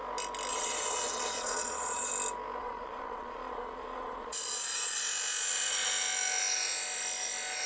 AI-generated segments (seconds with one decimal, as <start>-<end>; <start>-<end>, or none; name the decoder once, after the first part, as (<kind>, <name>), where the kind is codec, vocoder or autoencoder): 0.5-2.1 (vocoder, Vocos); 2.6-5.0